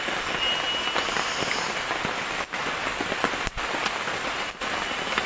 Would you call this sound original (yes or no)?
yes